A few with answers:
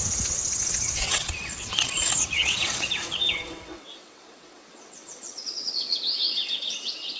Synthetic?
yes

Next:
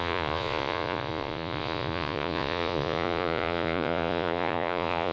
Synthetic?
yes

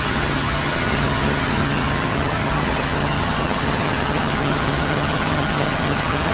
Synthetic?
yes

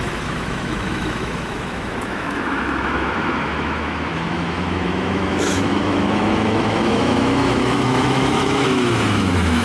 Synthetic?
yes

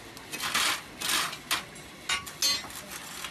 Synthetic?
no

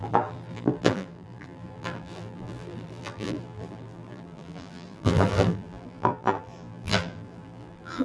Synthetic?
yes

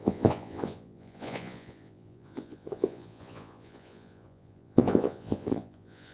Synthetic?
yes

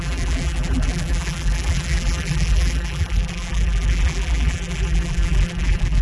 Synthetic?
yes